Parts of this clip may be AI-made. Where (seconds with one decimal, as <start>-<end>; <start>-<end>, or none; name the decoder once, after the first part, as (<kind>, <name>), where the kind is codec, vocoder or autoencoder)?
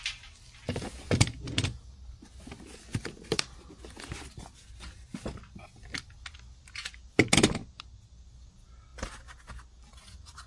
none